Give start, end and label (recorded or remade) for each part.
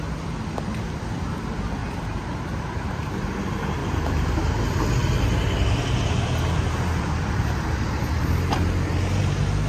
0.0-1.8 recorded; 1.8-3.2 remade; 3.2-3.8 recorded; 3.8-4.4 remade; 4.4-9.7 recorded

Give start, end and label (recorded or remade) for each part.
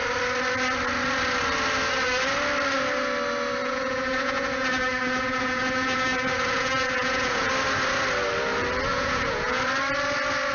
0.0-3.6 recorded; 3.6-7.5 remade; 7.5-8.9 recorded; 8.9-9.6 remade; 9.6-10.5 recorded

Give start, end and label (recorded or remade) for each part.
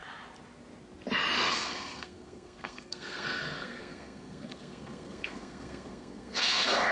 0.0-1.5 recorded; 1.5-6.9 remade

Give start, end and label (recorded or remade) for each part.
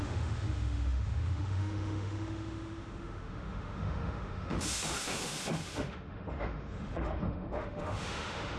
0.0-8.6 remade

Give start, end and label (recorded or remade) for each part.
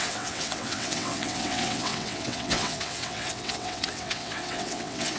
0.0-5.2 remade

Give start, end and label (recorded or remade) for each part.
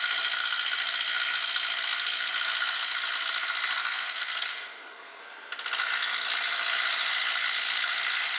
0.0-3.8 recorded; 3.8-5.2 remade; 5.2-8.4 recorded